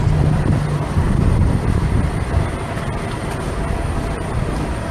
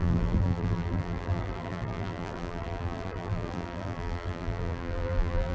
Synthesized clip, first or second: second